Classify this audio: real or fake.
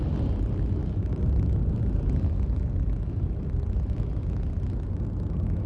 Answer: real